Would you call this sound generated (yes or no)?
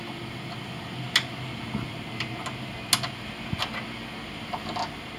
no